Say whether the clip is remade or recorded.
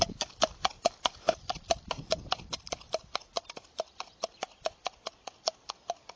recorded